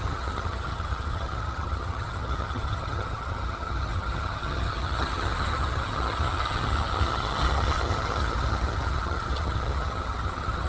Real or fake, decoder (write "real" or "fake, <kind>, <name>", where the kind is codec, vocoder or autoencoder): fake, vocoder, HiFi-GAN